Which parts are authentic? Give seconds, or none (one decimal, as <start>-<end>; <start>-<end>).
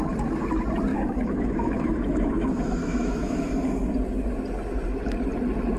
0.0-0.9; 3.5-5.8